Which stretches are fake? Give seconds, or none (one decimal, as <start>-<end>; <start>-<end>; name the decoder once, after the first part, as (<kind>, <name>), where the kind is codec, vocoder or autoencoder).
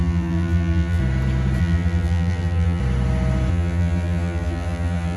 0.0-1.0 (vocoder, BigVGAN v2); 1.6-2.8; 3.5-5.2